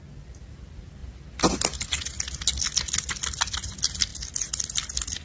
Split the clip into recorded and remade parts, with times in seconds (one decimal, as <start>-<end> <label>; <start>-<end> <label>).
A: 0.0-5.2 recorded